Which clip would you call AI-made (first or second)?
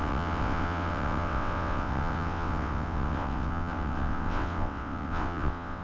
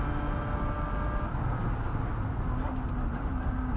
first